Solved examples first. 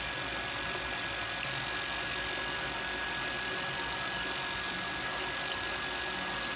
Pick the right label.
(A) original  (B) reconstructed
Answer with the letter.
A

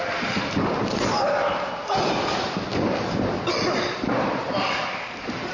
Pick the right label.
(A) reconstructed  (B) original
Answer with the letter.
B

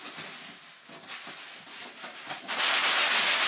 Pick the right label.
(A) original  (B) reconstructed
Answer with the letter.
A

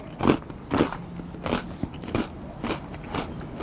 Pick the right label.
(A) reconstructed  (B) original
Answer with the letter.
B